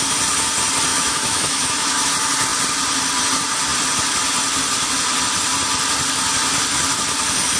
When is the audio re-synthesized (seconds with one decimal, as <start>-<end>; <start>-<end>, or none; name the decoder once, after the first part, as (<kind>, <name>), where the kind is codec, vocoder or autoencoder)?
0.9-2.1 (autoencoder, DAC-VAE)